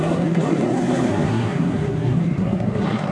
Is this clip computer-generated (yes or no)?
yes